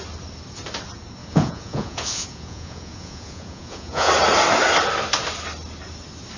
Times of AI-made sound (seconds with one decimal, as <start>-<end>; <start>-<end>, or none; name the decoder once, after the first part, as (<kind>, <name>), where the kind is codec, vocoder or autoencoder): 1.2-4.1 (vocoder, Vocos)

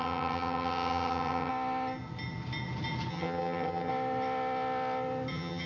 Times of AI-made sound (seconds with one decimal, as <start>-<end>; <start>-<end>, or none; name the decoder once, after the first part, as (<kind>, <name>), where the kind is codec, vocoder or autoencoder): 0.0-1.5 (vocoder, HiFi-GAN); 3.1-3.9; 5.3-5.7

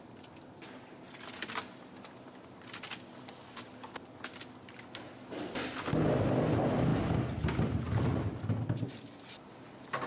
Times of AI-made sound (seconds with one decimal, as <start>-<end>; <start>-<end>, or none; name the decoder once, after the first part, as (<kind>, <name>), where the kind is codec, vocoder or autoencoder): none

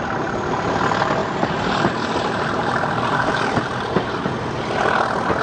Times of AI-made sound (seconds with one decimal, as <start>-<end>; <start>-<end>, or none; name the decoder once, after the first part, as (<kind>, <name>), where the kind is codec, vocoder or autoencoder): 1.2-4.3 (vocoder, BigVGAN v2)

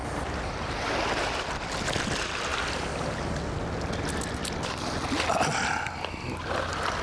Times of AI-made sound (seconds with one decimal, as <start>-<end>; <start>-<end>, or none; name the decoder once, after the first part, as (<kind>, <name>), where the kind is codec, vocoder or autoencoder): none

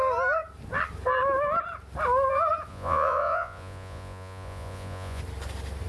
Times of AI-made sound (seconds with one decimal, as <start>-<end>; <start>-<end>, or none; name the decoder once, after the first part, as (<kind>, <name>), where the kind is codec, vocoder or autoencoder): 2.7-5.2 (vocoder, Vocos)

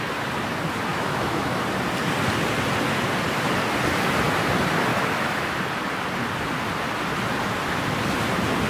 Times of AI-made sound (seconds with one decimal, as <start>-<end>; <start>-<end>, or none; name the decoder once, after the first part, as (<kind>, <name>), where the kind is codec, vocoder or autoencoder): 0.9-1.6 (autoencoder, DAC-VAE); 4.9-5.4